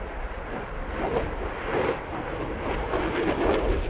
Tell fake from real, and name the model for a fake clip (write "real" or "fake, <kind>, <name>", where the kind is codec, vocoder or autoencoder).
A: real